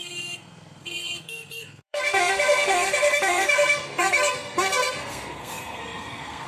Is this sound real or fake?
fake